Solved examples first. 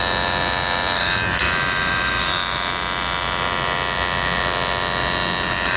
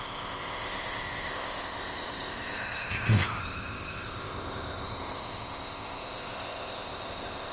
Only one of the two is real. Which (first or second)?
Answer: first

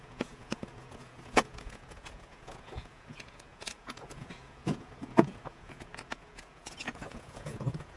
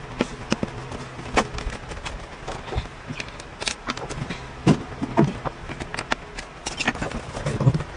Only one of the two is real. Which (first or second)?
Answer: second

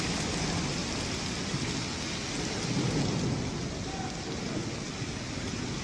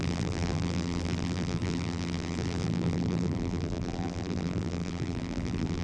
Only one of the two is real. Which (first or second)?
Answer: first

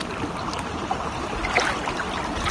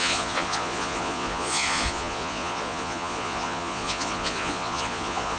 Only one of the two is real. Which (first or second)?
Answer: first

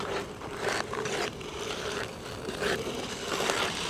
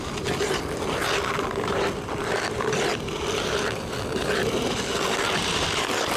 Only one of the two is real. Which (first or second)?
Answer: second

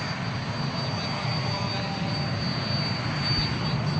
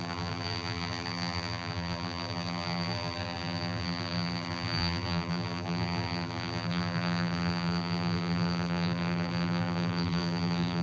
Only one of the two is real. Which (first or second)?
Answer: first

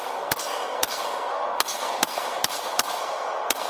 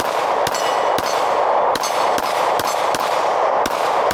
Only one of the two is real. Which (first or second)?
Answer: second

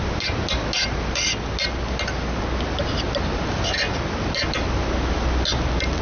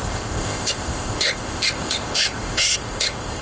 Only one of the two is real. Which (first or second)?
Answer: first